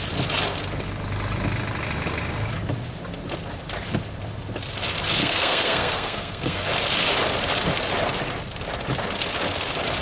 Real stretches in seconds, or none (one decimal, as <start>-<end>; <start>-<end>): 0.0-5.2; 6.7-10.0